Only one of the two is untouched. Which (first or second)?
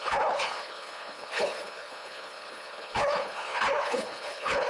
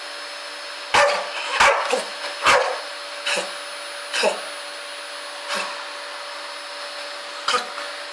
second